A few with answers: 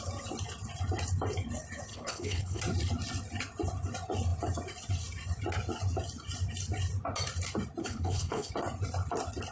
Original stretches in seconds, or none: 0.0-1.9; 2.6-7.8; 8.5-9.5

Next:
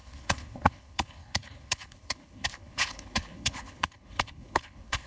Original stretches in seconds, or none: none

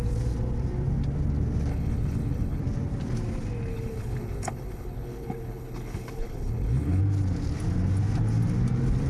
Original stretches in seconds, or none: 0.0-1.7; 2.6-3.7; 7.0-9.1

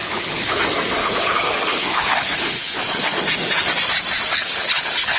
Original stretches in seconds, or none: 0.6-1.0; 3.2-4.3